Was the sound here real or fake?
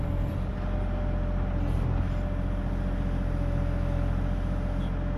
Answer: real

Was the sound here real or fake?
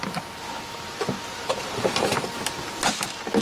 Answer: real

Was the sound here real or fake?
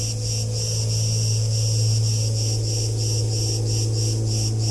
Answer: real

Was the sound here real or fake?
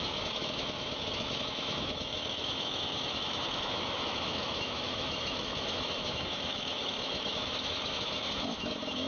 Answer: fake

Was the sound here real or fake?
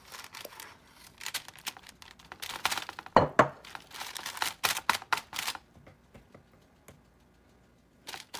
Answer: real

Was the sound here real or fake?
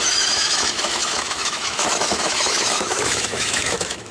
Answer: fake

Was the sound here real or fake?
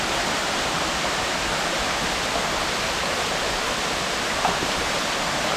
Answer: real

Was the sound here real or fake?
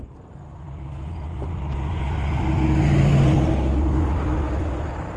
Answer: real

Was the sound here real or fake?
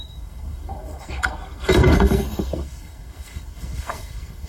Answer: fake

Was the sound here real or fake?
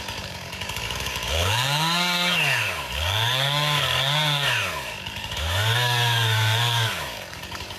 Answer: fake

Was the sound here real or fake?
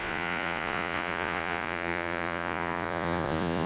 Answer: fake